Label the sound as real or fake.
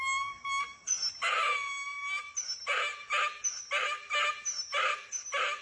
real